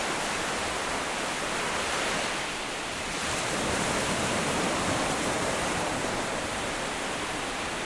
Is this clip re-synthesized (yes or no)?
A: yes